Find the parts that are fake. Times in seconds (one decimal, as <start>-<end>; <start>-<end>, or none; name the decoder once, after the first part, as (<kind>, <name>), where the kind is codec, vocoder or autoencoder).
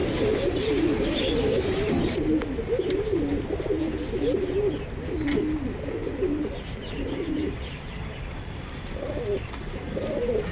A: 6.0-9.2 (vocoder, BigVGAN v2)